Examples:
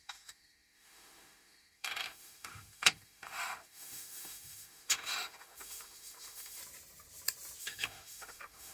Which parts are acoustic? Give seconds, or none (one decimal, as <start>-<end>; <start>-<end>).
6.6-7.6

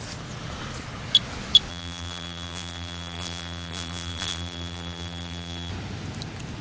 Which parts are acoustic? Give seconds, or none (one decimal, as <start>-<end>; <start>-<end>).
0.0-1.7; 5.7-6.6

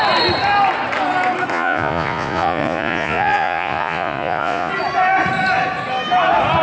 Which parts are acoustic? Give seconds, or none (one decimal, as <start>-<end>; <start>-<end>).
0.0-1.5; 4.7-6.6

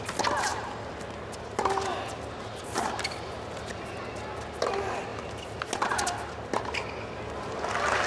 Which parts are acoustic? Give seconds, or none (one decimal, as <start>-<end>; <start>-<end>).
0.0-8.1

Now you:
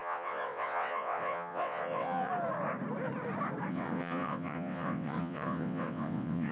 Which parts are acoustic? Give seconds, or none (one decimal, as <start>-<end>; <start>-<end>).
2.3-3.7

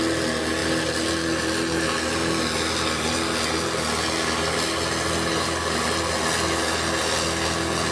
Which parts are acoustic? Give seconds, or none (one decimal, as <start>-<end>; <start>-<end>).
0.0-7.9

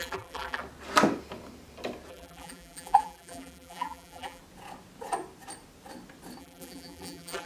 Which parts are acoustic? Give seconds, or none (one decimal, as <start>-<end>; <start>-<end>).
0.6-2.1; 4.4-6.4